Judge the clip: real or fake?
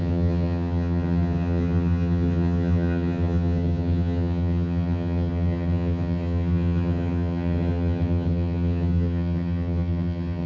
fake